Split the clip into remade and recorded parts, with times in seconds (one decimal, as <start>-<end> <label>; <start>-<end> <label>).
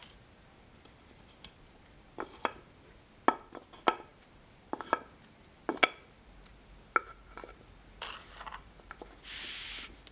0.0-10.1 recorded